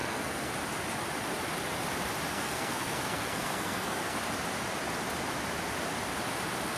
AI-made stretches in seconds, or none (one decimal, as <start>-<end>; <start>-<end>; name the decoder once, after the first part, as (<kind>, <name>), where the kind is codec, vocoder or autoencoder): 0.0-0.5 (codec, SNAC); 2.3-4.2